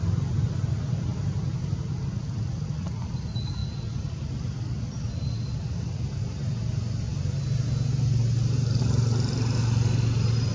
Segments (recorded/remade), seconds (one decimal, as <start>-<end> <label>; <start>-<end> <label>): 0.0-10.5 recorded